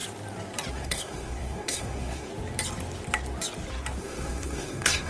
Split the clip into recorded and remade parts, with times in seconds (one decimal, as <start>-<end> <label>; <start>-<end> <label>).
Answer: 0.0-0.7 recorded; 0.7-2.3 remade; 2.3-4.0 recorded; 4.0-5.1 remade